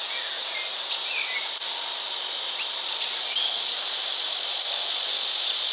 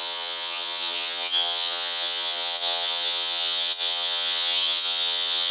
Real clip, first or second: first